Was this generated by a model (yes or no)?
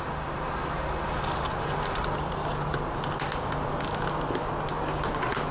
no